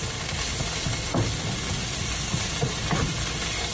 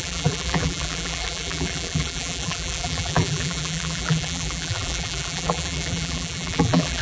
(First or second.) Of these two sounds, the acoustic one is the first